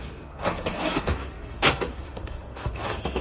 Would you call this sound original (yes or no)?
no